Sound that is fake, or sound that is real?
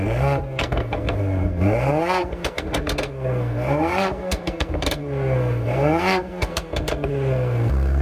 fake